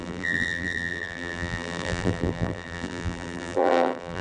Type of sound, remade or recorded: remade